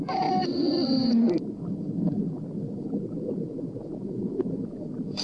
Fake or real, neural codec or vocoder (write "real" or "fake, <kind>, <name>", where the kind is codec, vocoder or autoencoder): real